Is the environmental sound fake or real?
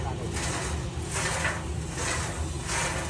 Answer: real